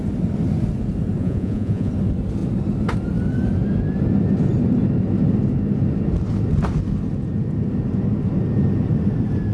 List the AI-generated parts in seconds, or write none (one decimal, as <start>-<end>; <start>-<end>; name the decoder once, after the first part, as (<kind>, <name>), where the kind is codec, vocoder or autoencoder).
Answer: 1.2-1.9 (vocoder, Vocos)